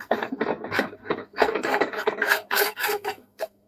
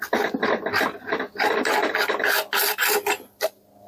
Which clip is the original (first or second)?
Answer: second